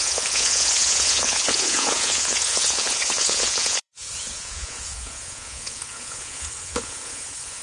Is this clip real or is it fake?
fake